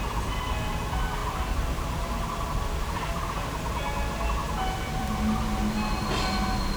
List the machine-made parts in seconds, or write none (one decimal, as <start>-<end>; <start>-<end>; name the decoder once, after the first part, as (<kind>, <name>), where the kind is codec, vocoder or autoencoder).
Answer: 1.2-3.1 (vocoder, BigVGAN v2); 4.4-5.4